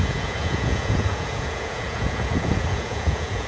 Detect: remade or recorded remade